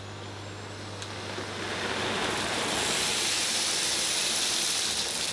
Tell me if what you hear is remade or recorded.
recorded